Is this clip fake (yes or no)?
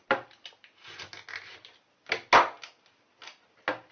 no